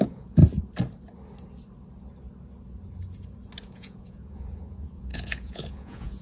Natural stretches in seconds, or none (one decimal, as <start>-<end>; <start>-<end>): 0.4-3.7